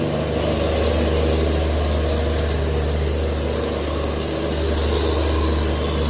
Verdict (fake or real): real